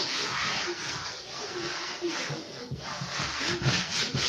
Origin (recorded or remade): remade